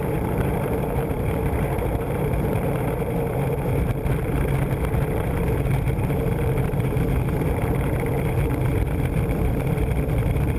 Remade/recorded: remade